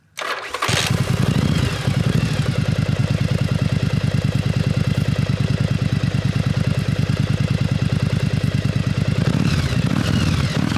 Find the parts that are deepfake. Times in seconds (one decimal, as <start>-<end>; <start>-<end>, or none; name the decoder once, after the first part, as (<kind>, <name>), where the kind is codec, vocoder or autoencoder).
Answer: none